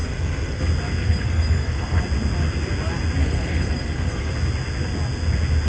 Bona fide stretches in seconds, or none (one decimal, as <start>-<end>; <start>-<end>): 0.6-1.0; 2.0-3.2; 4.3-5.7